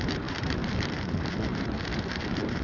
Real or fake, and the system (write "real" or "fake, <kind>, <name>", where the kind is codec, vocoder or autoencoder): fake, vocoder, BigVGAN v2